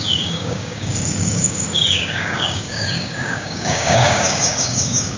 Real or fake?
fake